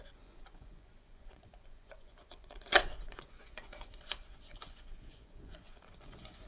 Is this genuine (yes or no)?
no